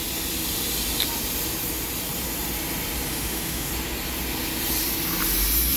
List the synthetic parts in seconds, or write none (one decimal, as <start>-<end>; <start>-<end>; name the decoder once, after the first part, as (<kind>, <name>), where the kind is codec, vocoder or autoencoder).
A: 3.1-3.7 (autoencoder, DAC-VAE)